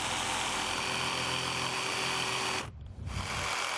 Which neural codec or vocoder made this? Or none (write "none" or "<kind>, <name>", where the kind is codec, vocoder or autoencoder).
none